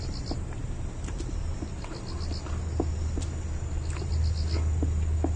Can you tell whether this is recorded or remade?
recorded